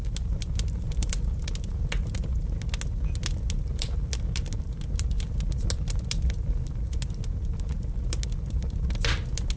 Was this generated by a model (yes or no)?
no